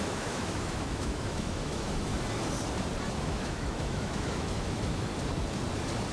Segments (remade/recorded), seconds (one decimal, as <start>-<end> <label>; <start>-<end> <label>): 0.0-2.1 remade; 2.1-3.1 recorded; 3.1-5.1 remade; 5.1-6.1 recorded

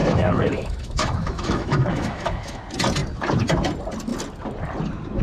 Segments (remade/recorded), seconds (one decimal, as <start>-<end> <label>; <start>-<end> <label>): 0.0-2.6 remade; 2.6-5.2 recorded

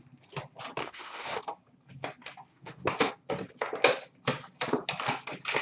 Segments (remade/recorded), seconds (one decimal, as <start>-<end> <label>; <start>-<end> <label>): 0.0-0.8 recorded; 0.8-1.4 remade; 1.4-2.5 recorded; 2.5-3.1 remade; 3.1-5.6 recorded

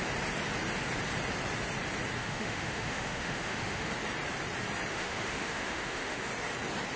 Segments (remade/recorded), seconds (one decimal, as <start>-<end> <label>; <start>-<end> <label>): 0.0-2.2 recorded; 2.2-3.9 remade; 3.9-4.9 recorded; 4.9-6.3 remade; 6.3-7.0 recorded

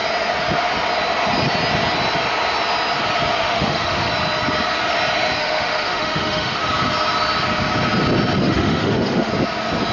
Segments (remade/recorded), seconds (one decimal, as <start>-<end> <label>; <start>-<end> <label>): 0.0-3.4 recorded; 3.4-4.1 remade; 4.1-5.4 recorded; 5.4-6.7 remade; 6.7-8.4 recorded; 8.4-9.3 remade; 9.3-9.9 recorded